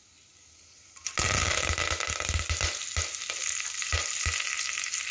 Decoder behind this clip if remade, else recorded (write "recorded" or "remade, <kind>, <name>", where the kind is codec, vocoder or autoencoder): recorded